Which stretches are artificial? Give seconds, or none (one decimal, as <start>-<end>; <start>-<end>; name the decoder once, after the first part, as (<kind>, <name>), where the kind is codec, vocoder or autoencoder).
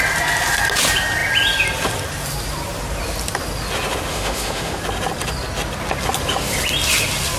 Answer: 4.1-4.8 (autoencoder, DAC-VAE)